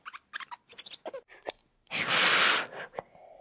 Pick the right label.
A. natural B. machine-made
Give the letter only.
A